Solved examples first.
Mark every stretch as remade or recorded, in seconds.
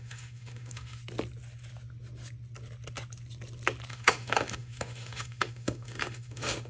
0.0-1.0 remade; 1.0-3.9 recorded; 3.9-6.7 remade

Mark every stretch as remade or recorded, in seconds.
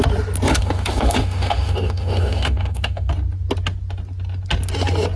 0.0-0.5 recorded; 0.5-3.1 remade; 3.1-5.2 recorded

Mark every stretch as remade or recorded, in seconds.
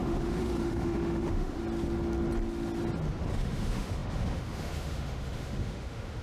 0.0-1.6 remade; 1.6-3.3 recorded; 3.3-6.2 remade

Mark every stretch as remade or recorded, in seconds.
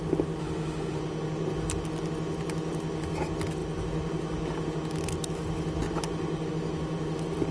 0.0-0.4 recorded; 0.4-1.0 remade; 1.0-7.5 recorded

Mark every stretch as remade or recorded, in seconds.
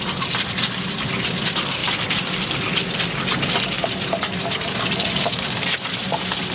0.0-6.5 recorded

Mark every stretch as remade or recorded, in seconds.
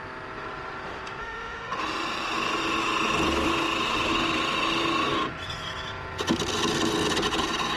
0.0-1.2 recorded; 1.2-1.8 remade; 1.8-7.8 recorded